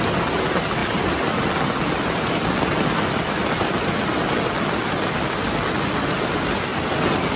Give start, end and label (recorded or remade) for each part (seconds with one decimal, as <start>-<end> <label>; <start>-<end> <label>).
0.0-7.4 recorded

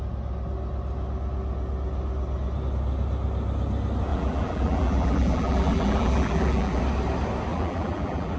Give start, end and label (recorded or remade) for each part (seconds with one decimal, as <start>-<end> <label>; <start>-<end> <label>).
0.0-4.1 recorded; 4.1-6.8 remade; 6.8-7.5 recorded; 7.5-8.4 remade

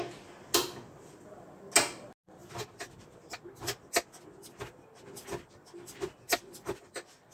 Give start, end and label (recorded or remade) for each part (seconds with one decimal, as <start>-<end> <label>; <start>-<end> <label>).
0.0-7.3 recorded

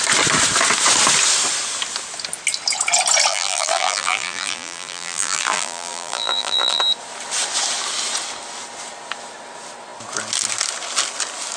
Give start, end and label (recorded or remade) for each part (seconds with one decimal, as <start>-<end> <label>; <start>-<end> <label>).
0.0-3.3 recorded; 3.3-6.8 remade; 6.8-11.6 recorded

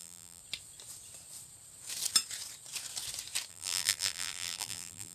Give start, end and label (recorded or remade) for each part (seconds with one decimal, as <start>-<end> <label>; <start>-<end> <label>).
0.0-0.4 remade; 0.4-3.5 recorded; 3.5-5.1 remade